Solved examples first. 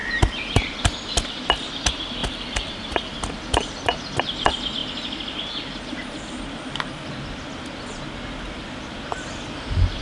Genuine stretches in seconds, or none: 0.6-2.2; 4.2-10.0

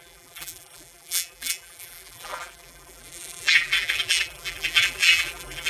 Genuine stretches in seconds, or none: none

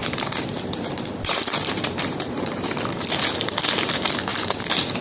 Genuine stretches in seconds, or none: 3.0-4.3